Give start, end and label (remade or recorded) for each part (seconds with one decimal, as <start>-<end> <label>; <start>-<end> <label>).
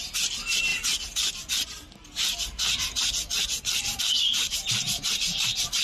0.0-5.8 recorded